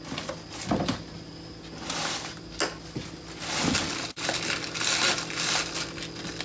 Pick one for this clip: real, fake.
real